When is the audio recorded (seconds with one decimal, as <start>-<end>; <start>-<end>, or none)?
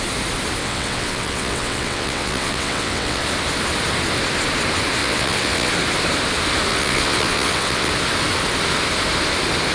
0.0-0.6; 3.2-5.0; 5.7-6.7; 7.9-9.7